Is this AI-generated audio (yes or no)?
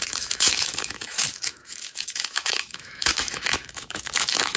yes